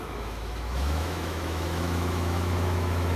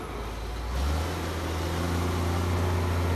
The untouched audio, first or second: second